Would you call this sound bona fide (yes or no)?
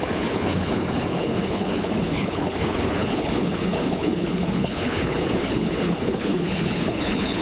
no